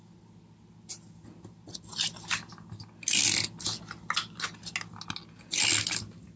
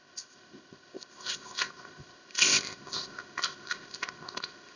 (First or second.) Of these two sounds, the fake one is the second